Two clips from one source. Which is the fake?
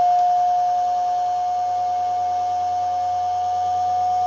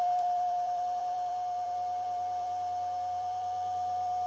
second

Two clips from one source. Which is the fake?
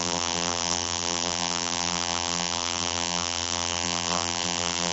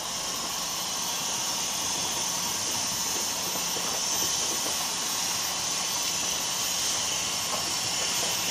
first